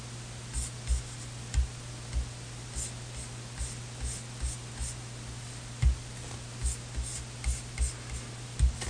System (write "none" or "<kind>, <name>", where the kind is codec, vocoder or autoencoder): none